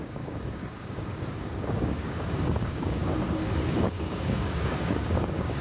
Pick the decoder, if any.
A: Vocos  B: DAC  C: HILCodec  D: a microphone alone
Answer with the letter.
B